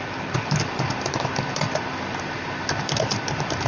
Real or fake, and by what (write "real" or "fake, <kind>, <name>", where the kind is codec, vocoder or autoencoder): real